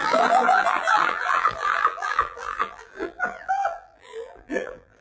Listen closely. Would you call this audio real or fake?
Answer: fake